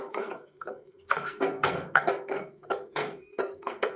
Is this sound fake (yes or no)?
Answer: yes